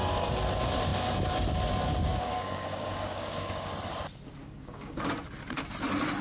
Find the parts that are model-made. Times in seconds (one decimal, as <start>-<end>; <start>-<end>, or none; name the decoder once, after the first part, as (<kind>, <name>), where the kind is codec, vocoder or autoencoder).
2.1-3.7 (codec, DAC); 4.4-5.1